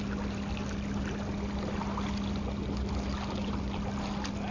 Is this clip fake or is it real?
real